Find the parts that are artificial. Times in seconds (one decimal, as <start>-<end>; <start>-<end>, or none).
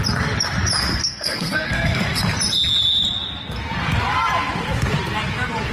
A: 1.0-2.2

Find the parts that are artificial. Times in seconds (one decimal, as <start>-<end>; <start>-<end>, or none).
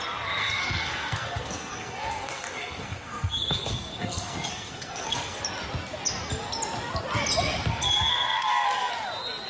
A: 0.4-5.4; 7.7-8.9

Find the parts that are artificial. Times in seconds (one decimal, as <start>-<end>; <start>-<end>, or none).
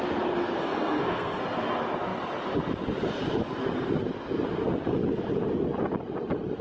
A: 0.6-1.4